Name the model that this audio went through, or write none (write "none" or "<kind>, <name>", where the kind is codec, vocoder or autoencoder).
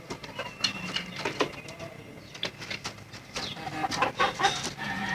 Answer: none